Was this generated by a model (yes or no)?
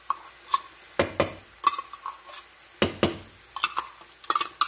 no